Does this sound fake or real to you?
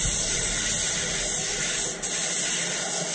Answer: real